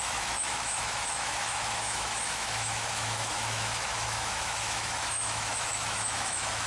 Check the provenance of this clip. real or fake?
fake